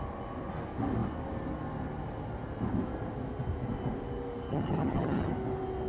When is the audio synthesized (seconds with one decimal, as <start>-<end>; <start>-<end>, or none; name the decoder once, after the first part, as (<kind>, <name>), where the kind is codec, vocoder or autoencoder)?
4.5-5.3 (vocoder, HiFi-GAN)